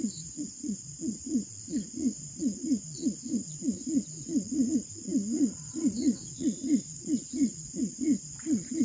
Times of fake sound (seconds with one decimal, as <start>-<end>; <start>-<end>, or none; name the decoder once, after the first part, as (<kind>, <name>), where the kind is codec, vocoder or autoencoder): 0.0-8.8 (vocoder, Vocos)